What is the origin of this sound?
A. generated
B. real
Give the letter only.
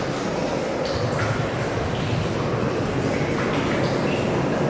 B